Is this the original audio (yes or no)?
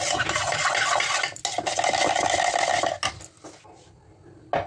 yes